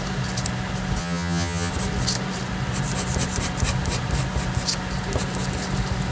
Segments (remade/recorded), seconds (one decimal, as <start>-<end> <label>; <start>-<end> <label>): 0.0-1.0 recorded; 1.0-1.7 remade; 1.7-6.1 recorded